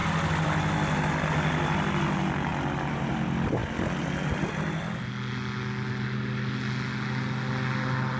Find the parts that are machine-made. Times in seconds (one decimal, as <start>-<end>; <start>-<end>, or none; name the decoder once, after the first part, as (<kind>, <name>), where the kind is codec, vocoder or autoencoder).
none